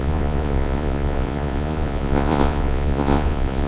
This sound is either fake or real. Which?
fake